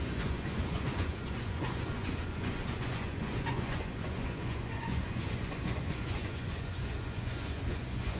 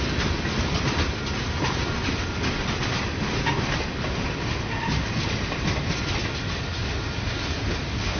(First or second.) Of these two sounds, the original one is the second